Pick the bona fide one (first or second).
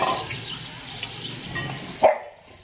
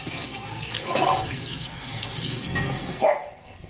first